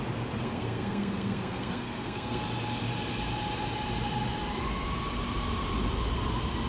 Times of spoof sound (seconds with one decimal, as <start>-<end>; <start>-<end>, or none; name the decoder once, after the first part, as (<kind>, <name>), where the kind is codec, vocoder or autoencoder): 0.4-2.4 (codec, SNAC)